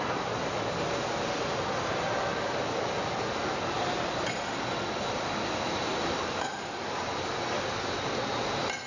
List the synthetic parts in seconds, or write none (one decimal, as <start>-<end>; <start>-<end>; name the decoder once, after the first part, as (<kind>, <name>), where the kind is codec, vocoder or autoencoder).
none